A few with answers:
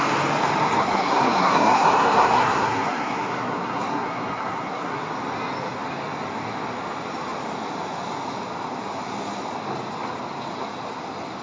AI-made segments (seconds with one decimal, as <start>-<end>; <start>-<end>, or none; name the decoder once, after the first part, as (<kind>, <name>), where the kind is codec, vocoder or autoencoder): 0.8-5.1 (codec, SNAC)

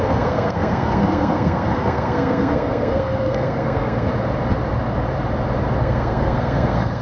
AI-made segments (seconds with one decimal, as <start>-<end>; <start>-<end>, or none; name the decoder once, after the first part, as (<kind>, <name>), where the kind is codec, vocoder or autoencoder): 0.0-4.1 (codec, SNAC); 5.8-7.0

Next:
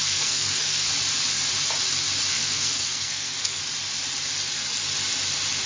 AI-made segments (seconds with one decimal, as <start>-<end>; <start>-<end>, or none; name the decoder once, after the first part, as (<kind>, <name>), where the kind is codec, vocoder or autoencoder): 0.0-0.9 (codec, SNAC); 2.3-3.6